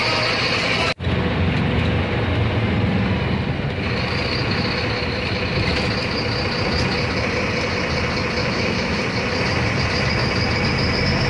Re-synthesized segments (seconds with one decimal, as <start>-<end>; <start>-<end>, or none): 8.4-9.0